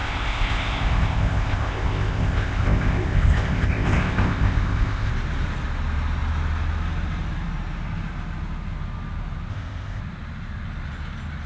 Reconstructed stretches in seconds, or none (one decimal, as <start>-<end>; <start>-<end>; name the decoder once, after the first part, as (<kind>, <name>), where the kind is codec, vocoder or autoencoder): 0.0-5.1 (codec, ZipCodec); 9.5-10.0